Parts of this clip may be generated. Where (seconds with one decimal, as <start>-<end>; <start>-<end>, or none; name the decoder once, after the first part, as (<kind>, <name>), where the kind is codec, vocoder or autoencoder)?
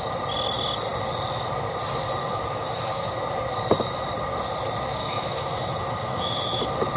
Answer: 2.2-3.1 (autoencoder, DAC-VAE); 5.0-6.6